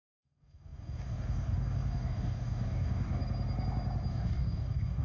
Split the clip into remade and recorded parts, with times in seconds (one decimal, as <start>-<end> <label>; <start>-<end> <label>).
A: 0.0-3.2 remade; 3.2-4.1 recorded; 4.1-5.0 remade